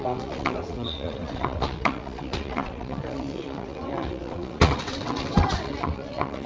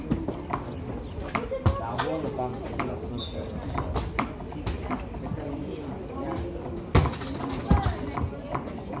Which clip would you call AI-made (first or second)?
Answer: first